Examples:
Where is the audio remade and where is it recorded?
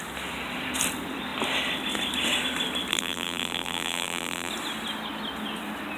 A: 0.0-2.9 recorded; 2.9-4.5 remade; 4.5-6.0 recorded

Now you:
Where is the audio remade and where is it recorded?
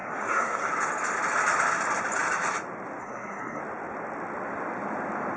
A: 0.0-0.7 remade; 0.7-3.0 recorded; 3.0-3.6 remade; 3.6-5.4 recorded